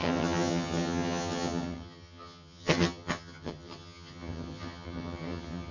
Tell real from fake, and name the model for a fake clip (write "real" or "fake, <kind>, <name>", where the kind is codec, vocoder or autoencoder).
fake, vocoder, HiFi-GAN